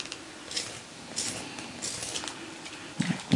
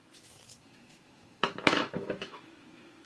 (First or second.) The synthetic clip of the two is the second